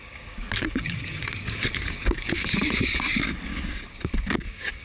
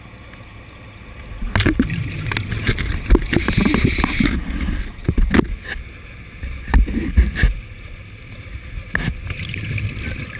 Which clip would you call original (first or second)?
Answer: second